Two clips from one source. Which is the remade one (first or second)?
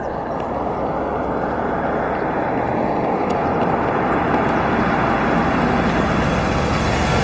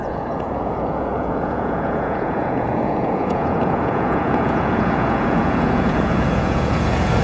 second